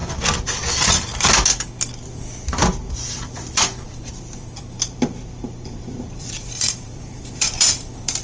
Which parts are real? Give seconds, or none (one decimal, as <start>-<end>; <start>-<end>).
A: 0.0-0.7; 1.1-3.2